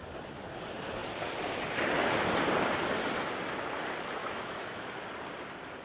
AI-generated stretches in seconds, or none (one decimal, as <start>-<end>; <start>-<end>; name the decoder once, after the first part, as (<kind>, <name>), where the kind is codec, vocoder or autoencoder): 4.2-5.0 (autoencoder, DAC-VAE)